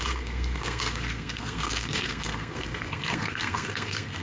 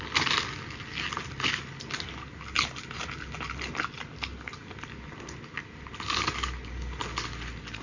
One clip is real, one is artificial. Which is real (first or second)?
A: second